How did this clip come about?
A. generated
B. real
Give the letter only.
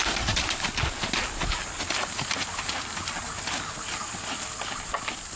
B